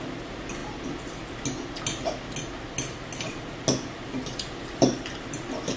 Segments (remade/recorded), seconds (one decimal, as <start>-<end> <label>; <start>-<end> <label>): 0.0-0.6 remade; 0.6-4.1 recorded; 4.1-5.8 remade